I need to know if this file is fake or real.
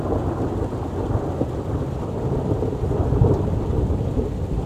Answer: real